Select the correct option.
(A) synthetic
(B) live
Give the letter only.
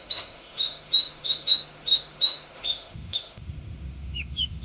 A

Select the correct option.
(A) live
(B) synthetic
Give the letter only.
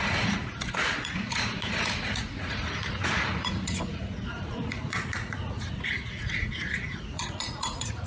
B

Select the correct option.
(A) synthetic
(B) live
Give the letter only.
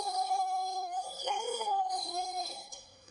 A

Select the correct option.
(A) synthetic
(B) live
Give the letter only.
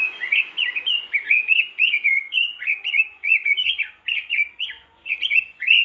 A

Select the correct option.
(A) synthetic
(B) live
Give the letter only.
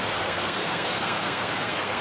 A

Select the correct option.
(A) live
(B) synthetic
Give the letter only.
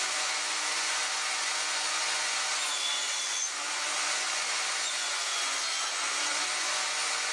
B